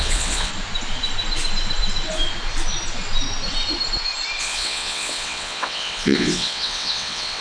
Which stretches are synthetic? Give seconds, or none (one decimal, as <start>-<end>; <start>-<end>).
0.0-0.5; 4.4-7.4